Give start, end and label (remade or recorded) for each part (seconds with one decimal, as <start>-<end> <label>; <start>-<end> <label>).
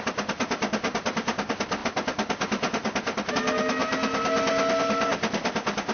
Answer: 0.0-5.9 recorded